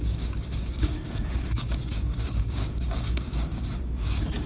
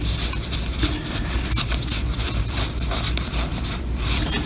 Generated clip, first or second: first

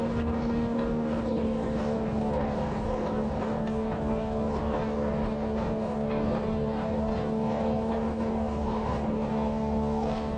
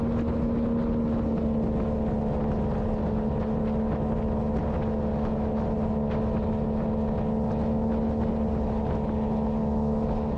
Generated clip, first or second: first